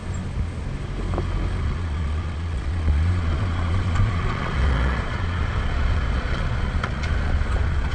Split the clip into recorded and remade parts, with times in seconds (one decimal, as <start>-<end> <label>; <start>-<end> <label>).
0.0-1.6 recorded; 1.6-7.9 remade